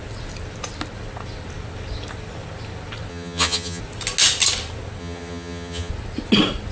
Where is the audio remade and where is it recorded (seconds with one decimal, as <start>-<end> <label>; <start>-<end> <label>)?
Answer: 0.0-3.1 recorded; 3.1-3.8 remade; 3.8-5.0 recorded; 5.0-5.9 remade; 5.9-6.7 recorded